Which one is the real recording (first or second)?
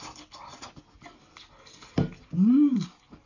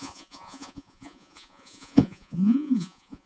first